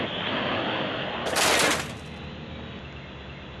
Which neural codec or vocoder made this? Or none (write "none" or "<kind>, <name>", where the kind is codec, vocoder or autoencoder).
none